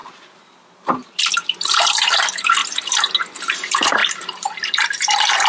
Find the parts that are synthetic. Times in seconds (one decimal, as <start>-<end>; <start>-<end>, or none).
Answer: 0.0-2.6; 3.5-5.5